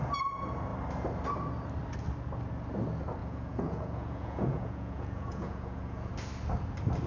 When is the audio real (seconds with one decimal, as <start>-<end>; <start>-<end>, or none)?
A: 0.0-3.2; 6.1-7.1